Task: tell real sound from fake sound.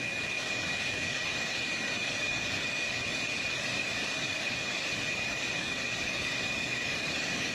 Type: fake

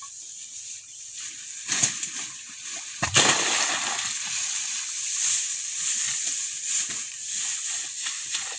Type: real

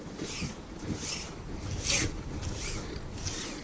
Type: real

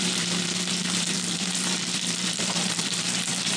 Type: fake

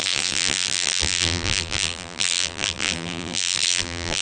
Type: fake